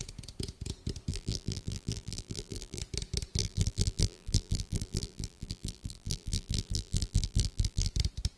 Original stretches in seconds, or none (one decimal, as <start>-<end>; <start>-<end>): 0.0-1.1; 2.8-3.4; 7.9-8.4